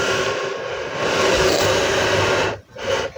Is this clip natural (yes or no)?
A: yes